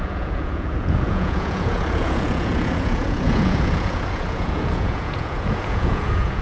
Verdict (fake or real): fake